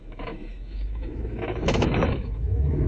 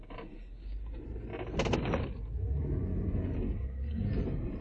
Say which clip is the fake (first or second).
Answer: first